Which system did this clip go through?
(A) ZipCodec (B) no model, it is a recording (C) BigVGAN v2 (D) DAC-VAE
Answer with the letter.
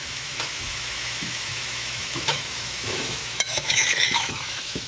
D